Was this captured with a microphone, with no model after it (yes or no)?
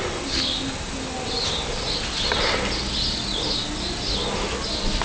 yes